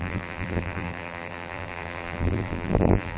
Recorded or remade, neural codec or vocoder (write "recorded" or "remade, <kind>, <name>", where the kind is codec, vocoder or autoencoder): remade, vocoder, BigVGAN v2